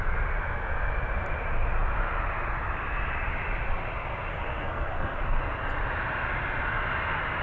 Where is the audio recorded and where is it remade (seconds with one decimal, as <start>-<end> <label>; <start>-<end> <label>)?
0.0-4.3 recorded; 4.3-5.4 remade; 5.4-7.4 recorded